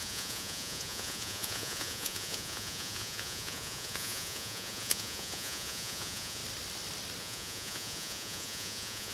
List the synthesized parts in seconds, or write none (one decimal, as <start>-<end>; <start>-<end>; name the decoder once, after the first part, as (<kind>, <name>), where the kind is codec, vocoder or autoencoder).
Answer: 0.0-6.4 (vocoder, Vocos); 7.2-9.1